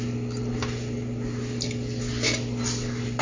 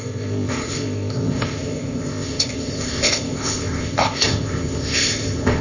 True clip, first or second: first